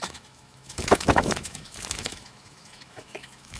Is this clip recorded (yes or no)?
no